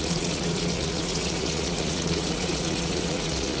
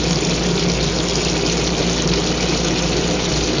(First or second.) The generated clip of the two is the first